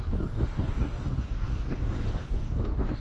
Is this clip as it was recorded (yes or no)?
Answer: no